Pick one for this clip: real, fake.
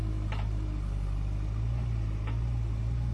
real